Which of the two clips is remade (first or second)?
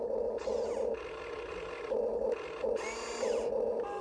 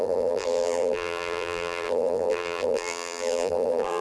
second